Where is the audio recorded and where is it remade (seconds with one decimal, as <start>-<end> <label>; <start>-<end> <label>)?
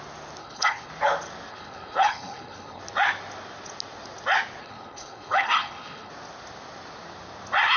0.0-0.4 recorded; 0.4-0.9 remade; 0.9-1.5 recorded; 1.5-2.8 remade; 2.8-4.6 recorded; 4.6-6.1 remade; 6.1-7.8 recorded